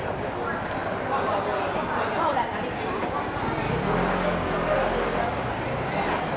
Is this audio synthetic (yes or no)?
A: no